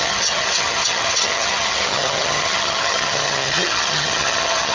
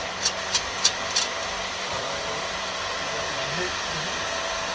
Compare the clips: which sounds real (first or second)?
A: second